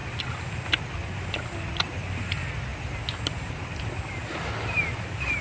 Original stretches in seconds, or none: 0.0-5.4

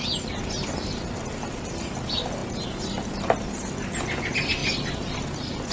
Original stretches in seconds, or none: 0.0-5.7

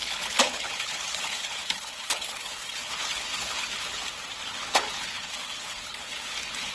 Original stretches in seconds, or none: 4.0-4.5

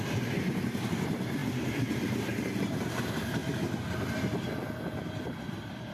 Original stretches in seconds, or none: 3.4-4.3

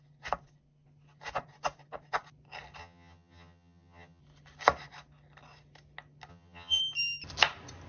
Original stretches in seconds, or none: 0.0-2.8; 4.2-6.3; 6.8-7.9

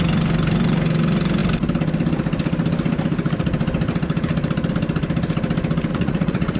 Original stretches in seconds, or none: 0.0-5.9

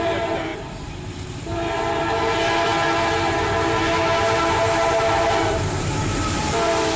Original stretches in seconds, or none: none